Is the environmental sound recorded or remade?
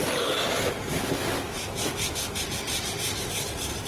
recorded